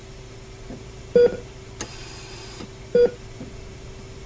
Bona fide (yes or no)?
yes